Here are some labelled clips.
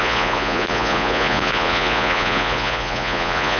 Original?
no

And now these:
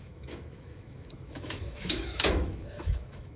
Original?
no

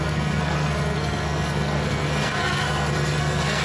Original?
no